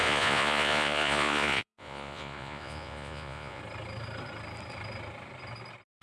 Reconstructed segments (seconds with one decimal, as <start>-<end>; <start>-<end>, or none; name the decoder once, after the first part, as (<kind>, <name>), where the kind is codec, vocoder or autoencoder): 0.0-3.6 (vocoder, Vocos)